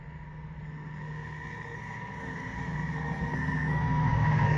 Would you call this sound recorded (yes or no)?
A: no